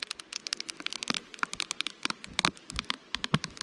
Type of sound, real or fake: real